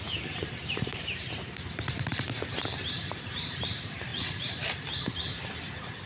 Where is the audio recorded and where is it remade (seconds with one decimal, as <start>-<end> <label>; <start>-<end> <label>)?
0.0-4.1 remade; 4.1-6.1 recorded